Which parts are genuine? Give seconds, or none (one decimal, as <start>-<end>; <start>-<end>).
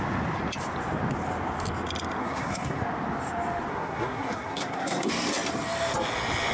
0.0-2.2; 2.8-3.7; 5.1-6.5